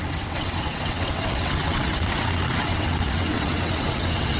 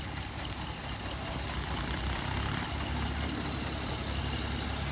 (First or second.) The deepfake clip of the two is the first